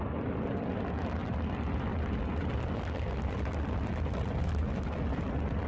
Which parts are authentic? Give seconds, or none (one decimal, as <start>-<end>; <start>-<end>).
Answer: 0.0-5.7